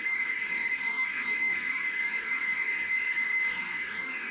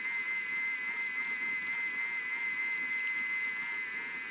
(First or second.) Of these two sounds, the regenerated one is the first